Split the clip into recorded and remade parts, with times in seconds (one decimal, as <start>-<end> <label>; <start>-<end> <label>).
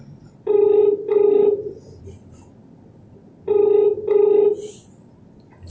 0.0-5.7 recorded